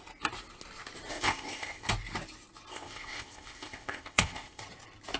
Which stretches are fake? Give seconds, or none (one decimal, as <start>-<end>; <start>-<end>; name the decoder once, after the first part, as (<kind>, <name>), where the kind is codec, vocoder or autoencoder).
1.1-1.9 (codec, ZipCodec); 2.7-4.6